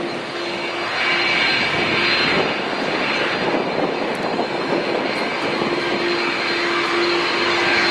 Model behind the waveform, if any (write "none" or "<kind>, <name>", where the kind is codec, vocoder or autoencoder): none